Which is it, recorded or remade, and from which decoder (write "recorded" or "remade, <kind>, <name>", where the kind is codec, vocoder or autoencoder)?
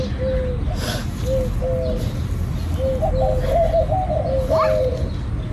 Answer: recorded